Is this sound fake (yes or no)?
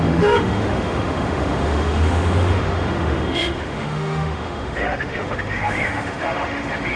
yes